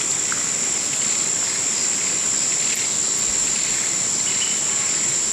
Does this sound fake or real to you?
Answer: real